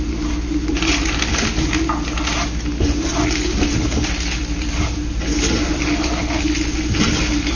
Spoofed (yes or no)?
no